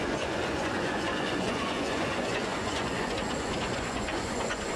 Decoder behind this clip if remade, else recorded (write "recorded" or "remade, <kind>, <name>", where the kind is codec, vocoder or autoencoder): remade, vocoder, Vocos